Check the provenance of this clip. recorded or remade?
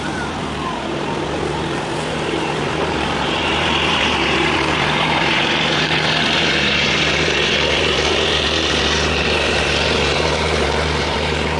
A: remade